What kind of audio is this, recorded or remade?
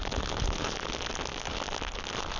recorded